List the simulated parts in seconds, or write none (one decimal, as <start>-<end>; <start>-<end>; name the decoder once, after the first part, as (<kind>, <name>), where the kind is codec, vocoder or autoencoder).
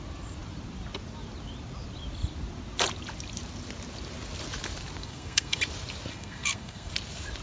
5.0-5.6 (codec, SNAC); 6.1-6.9